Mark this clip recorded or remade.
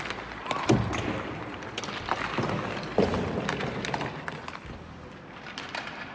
recorded